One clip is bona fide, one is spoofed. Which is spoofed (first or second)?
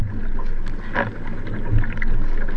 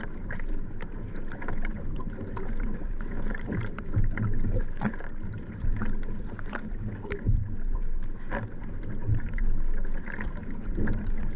second